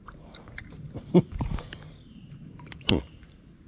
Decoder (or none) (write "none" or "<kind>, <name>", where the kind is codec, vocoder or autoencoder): vocoder, BigVGAN v2